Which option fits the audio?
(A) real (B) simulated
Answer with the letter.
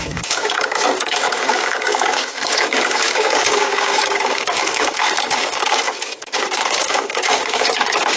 B